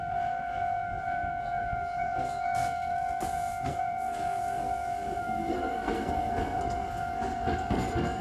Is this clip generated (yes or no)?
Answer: yes